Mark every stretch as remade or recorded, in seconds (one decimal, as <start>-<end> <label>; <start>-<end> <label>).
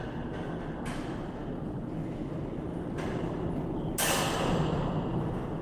0.0-5.6 recorded